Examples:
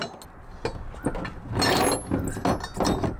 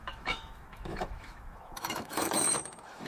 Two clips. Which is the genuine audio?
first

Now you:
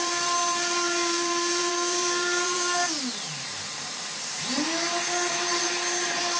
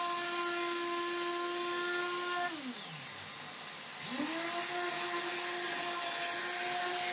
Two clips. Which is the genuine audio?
second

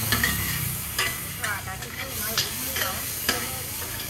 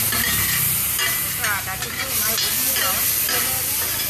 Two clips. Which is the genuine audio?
second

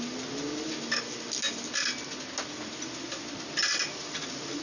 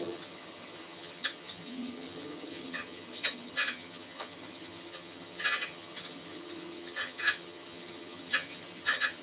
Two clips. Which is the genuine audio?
first